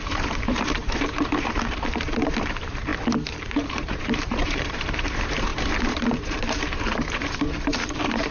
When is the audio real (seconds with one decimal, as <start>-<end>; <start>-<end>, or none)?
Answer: 2.9-3.4